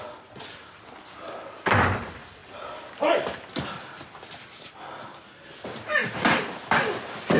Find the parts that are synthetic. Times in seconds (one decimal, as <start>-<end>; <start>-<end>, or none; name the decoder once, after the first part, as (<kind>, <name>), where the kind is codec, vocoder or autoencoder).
none